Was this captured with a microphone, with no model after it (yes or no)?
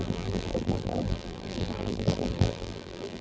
no